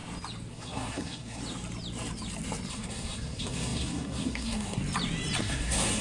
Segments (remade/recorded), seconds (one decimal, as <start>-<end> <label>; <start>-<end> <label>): 0.0-0.5 recorded; 0.5-1.4 remade; 1.4-2.7 recorded; 2.7-4.8 remade; 4.8-5.4 recorded; 5.4-6.0 remade